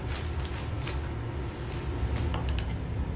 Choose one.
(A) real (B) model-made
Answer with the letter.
A